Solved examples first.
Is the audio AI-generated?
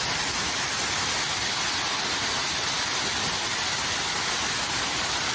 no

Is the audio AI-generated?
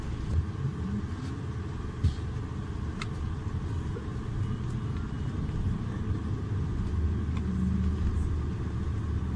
no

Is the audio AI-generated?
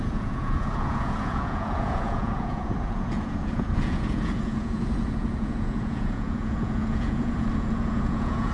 yes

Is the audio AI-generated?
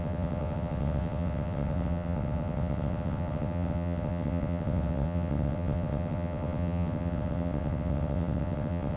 yes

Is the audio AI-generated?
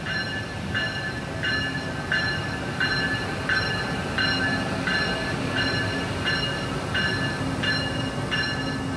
no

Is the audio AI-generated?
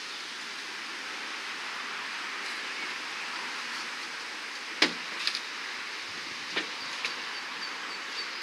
no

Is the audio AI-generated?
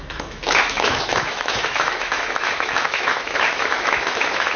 yes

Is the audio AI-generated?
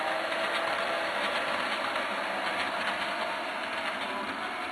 no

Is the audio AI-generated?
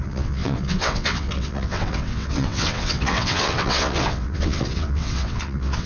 yes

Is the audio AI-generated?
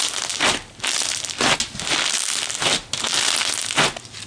no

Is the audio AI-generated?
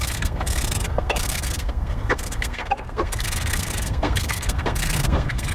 yes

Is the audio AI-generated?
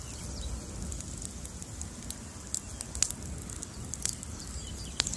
no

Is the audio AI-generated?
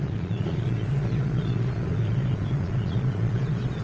yes